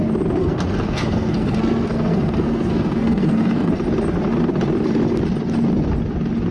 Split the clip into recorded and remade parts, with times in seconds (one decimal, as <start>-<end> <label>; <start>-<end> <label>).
0.0-0.4 recorded; 0.4-3.7 remade; 3.7-6.5 recorded